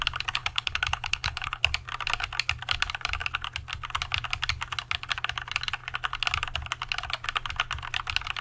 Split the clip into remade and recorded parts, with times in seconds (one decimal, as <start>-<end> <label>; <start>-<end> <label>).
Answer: 0.0-0.4 recorded; 0.4-1.6 remade; 1.6-8.4 recorded